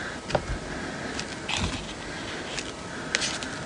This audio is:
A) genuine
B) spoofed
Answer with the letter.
A